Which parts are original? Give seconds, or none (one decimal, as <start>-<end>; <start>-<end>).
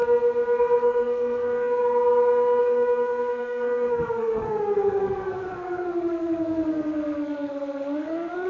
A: 0.0-0.6; 1.8-2.6